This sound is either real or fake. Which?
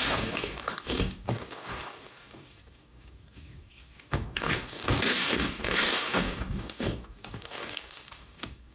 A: fake